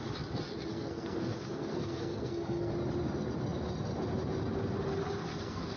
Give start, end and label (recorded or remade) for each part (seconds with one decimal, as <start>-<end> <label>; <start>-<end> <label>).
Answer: 0.0-0.7 recorded; 0.7-2.7 remade; 2.7-5.3 recorded; 5.3-5.8 remade